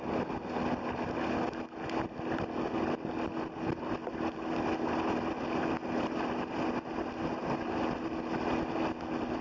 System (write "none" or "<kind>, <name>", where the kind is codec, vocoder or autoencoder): none